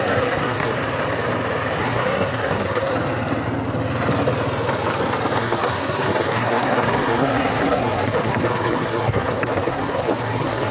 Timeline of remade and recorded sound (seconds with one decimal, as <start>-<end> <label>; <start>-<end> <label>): 0.0-0.8 remade; 0.8-1.8 recorded; 1.8-2.9 remade; 2.9-5.4 recorded; 5.4-10.7 remade